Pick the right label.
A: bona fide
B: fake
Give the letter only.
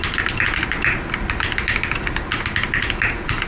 A